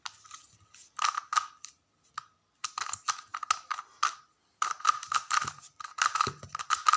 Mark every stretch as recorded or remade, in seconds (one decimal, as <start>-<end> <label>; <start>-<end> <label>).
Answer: 0.0-7.0 recorded